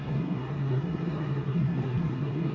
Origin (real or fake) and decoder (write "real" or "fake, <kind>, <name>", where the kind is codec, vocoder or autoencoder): fake, codec, SNAC